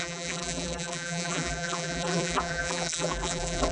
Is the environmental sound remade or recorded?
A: remade